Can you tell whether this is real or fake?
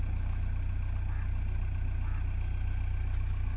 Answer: real